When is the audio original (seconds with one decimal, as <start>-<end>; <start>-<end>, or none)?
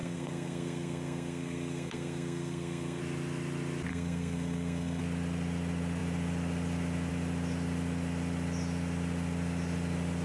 3.0-3.9; 5.0-10.2